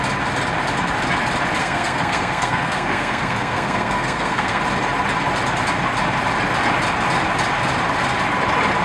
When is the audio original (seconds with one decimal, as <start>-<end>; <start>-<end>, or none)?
0.0-1.6; 4.6-8.8